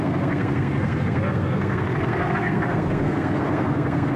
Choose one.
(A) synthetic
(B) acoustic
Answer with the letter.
A